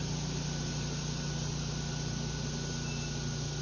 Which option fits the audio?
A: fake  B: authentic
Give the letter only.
B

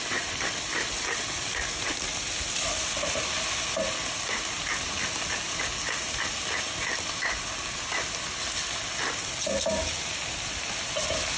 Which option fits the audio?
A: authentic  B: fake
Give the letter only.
A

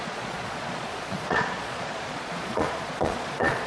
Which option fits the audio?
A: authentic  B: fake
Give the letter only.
B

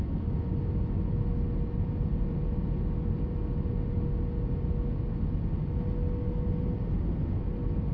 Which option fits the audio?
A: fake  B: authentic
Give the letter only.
B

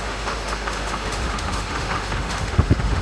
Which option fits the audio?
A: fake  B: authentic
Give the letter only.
A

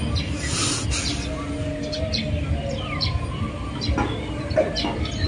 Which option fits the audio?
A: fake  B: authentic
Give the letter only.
B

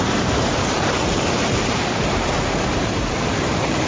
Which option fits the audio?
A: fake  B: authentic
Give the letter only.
A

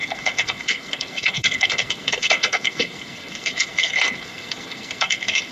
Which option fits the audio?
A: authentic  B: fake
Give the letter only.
B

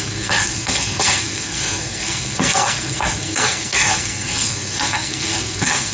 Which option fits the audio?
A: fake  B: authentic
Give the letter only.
A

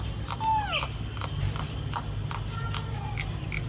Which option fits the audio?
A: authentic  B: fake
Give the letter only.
A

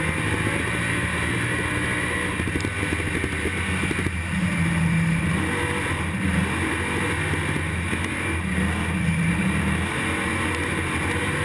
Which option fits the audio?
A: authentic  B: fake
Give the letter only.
A